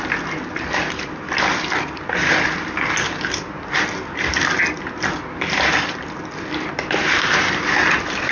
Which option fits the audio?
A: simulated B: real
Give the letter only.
B